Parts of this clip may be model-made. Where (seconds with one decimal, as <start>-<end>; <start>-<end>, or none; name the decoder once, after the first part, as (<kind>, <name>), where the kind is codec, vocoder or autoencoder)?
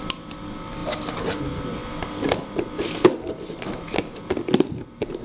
none